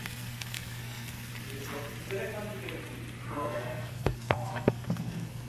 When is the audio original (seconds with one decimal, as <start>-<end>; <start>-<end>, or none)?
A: 1.3-3.3